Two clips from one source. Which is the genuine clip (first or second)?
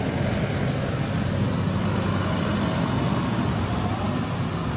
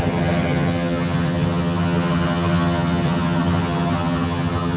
first